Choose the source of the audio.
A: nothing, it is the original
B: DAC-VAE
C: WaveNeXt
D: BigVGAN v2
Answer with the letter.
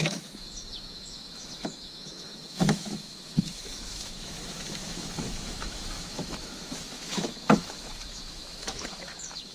B